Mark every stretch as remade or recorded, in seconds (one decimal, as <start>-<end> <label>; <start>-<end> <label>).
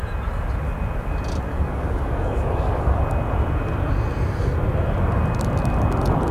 0.0-1.5 recorded; 1.5-3.0 remade; 3.0-6.3 recorded